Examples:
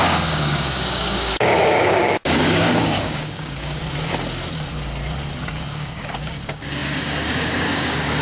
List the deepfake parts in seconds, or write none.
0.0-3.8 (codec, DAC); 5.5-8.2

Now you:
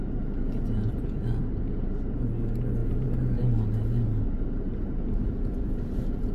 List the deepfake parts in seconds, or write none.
none

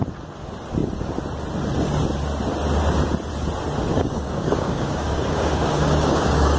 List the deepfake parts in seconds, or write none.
3.9-6.6 (codec, DAC)

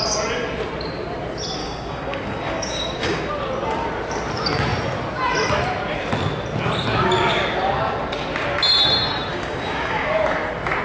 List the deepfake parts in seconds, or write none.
1.6-3.3 (codec, DAC); 9.3-10.1

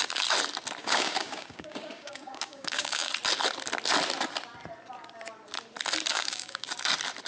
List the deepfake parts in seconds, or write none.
0.8-3.1 (codec, DAC); 6.1-6.7

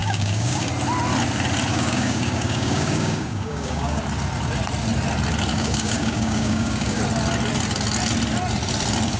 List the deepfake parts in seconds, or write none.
0.0-0.7 (codec, DAC); 1.7-4.0; 5.5-7.0